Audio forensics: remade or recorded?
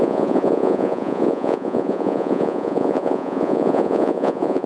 remade